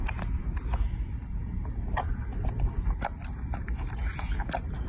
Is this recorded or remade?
recorded